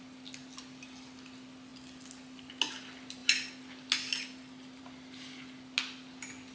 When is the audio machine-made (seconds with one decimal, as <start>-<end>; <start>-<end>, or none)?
none